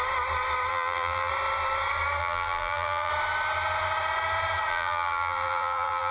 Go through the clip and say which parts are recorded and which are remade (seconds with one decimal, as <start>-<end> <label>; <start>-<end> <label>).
0.0-0.7 recorded; 0.7-1.3 remade; 1.3-2.2 recorded; 2.2-3.1 remade; 3.1-4.7 recorded; 4.7-6.1 remade